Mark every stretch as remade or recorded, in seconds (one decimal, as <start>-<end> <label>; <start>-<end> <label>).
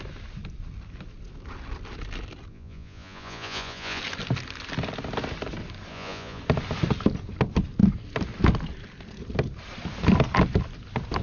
0.0-2.5 recorded; 2.5-4.0 remade; 4.0-5.9 recorded; 5.9-6.4 remade; 6.4-11.2 recorded